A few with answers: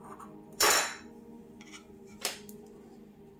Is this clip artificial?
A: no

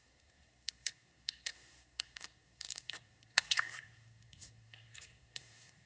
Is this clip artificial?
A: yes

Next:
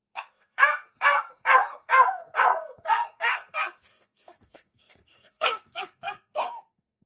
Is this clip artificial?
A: yes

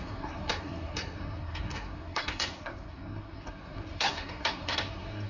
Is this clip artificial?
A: yes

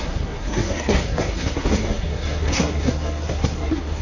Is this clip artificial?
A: yes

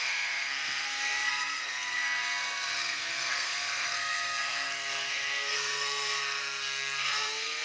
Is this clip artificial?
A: yes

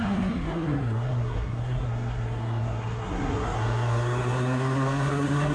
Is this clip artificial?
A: yes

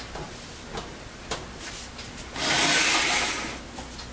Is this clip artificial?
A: no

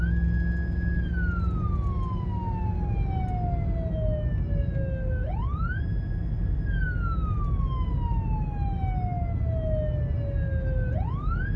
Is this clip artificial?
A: no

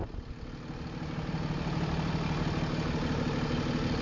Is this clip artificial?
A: no